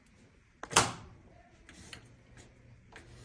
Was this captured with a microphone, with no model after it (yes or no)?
yes